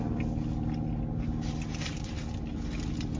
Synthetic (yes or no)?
no